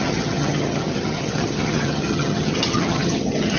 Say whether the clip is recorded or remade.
remade